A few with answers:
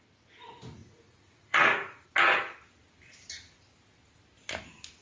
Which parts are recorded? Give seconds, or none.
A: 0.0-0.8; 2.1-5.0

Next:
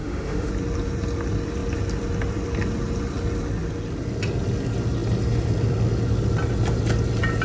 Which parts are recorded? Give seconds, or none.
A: 0.5-7.4

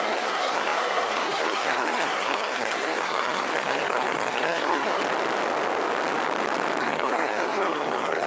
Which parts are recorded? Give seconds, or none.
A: 5.0-6.8

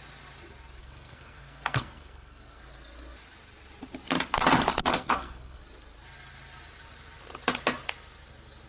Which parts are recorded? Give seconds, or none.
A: 0.0-0.8; 2.6-4.8; 5.6-8.7